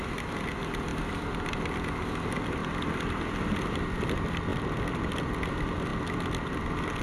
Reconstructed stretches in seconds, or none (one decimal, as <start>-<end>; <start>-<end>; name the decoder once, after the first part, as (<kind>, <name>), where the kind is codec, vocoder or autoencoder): 0.9-1.4 (vocoder, BigVGAN v2); 4.5-5.1